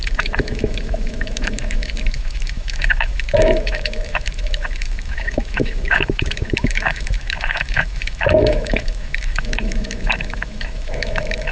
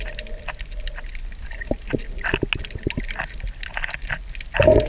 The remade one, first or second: first